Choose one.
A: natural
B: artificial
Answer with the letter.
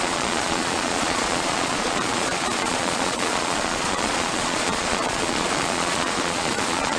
B